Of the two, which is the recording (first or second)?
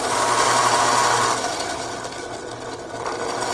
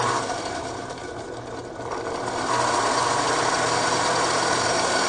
first